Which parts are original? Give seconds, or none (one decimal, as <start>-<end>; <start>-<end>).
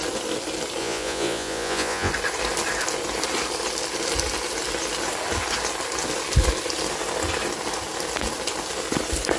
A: 0.0-0.8; 2.1-9.4